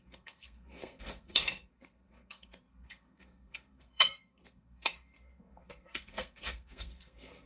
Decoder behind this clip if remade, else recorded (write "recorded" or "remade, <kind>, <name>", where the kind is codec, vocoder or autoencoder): remade, codec, SNAC